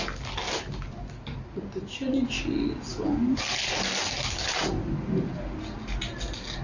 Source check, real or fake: real